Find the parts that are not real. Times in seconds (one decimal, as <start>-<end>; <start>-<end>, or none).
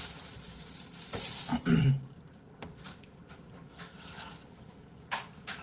1.1-4.3